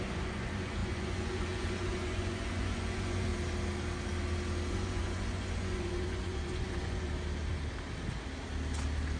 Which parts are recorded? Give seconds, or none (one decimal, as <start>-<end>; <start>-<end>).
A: 3.3-4.7; 7.1-9.2